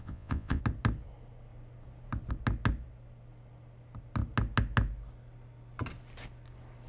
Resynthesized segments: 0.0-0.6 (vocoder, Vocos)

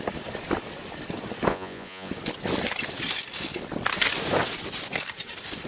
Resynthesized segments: 1.5-2.1 (vocoder, Vocos)

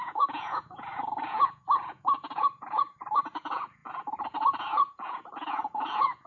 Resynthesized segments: 0.0-6.3 (vocoder, Vocos)